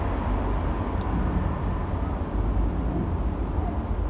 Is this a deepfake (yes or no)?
no